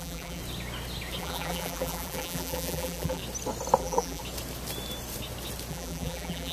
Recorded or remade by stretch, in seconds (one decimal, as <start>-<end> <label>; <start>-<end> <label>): 0.0-0.4 remade; 0.4-1.2 recorded; 1.2-3.2 remade; 3.2-3.8 recorded; 3.8-4.2 remade; 4.2-5.7 recorded; 5.7-6.5 remade